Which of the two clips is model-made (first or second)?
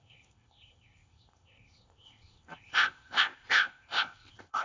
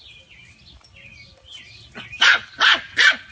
first